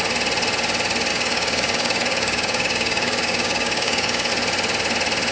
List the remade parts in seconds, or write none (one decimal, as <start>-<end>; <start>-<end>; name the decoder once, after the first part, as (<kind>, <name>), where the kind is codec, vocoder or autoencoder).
1.1-4.3 (codec, DAC)